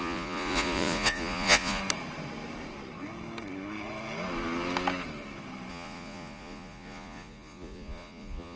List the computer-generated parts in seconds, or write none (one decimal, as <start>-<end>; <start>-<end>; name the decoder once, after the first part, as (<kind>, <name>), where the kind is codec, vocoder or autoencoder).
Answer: 0.0-1.8 (vocoder, Vocos); 5.7-8.6